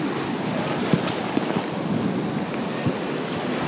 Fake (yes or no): no